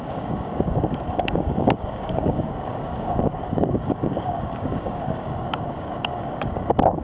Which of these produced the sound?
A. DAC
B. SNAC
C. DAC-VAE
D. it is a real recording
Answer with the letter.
A